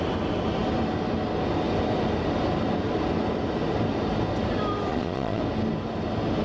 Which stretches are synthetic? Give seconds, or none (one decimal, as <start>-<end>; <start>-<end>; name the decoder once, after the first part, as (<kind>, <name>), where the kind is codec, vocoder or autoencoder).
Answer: 4.9-5.4 (vocoder, Vocos)